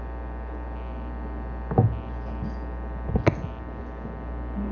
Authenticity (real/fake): real